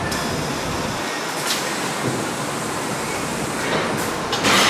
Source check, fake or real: fake